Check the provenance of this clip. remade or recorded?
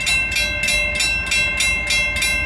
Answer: recorded